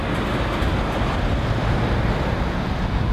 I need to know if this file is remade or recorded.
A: recorded